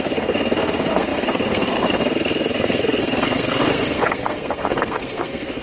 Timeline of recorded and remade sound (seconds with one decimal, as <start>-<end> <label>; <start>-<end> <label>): 0.0-5.6 remade